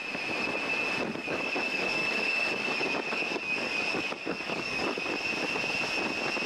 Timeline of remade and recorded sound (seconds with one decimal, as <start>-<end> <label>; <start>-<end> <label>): 0.0-1.2 recorded; 1.2-5.1 remade; 5.1-6.5 recorded